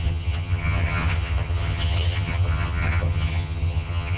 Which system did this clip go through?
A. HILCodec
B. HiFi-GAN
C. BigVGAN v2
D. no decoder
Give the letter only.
B